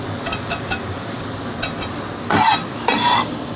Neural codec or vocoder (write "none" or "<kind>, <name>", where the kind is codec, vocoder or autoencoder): none